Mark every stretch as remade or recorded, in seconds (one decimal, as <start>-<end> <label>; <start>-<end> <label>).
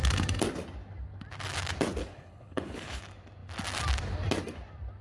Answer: 0.0-2.0 recorded; 2.0-3.0 remade; 3.0-5.0 recorded